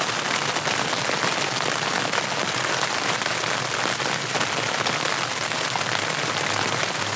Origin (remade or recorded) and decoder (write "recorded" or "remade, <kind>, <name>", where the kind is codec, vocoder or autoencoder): recorded